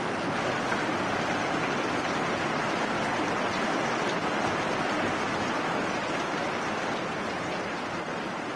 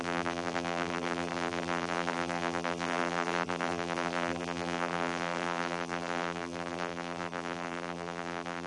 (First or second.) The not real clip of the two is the second